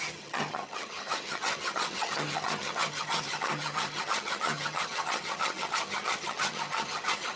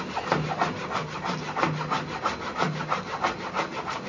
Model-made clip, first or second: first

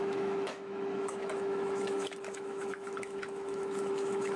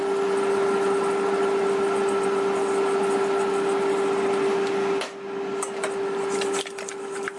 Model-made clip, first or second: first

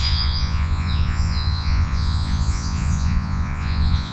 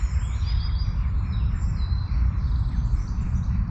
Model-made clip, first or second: first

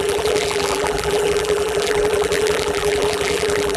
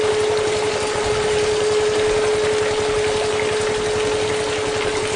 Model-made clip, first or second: first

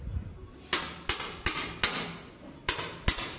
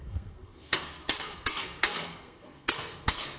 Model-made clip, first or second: second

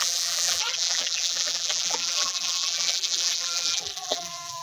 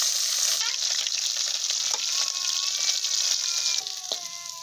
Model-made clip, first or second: first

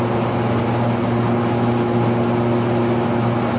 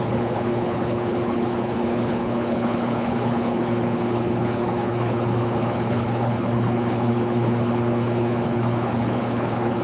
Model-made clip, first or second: second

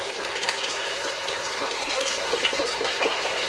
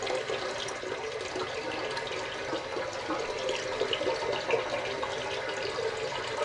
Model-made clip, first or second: first